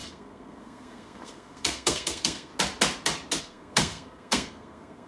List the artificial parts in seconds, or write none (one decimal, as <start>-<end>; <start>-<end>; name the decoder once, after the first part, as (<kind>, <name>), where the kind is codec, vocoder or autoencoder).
0.0-2.5 (codec, SNAC); 3.4-5.1